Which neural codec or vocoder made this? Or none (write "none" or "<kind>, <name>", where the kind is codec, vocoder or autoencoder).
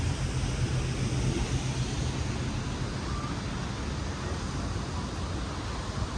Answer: none